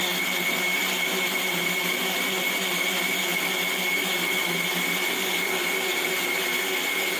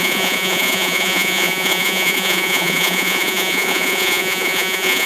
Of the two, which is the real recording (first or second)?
first